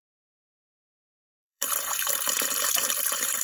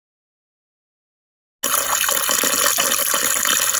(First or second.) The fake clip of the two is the first